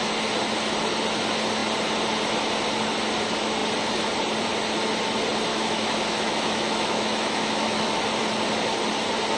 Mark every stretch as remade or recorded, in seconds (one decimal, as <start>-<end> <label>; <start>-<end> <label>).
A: 0.0-5.5 recorded; 5.5-7.9 remade; 7.9-9.4 recorded